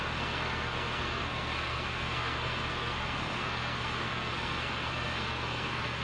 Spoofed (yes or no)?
yes